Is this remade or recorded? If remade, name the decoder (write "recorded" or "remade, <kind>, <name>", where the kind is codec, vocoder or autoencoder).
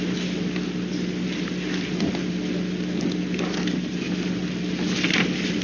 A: recorded